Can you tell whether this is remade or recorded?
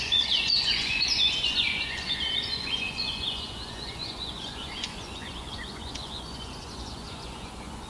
remade